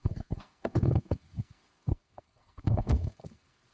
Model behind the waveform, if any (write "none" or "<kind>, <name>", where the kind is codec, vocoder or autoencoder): codec, SNAC